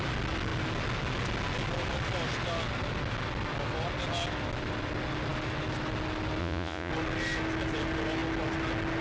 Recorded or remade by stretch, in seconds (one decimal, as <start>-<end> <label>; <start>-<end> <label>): 0.0-6.4 recorded; 6.4-6.9 remade; 6.9-9.0 recorded